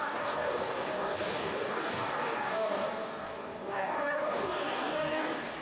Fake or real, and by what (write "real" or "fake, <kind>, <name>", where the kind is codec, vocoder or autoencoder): fake, codec, DAC